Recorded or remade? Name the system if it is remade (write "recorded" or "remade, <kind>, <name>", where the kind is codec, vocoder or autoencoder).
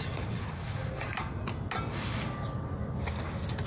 recorded